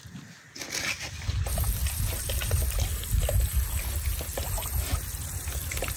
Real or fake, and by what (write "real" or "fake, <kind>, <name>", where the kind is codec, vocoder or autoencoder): real